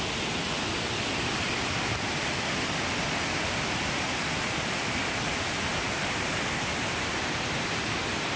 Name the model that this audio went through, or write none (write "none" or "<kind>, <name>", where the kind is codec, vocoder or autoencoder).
none